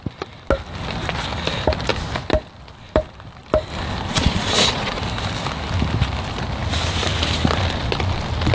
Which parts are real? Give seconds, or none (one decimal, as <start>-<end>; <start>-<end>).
0.0-4.1; 5.0-8.5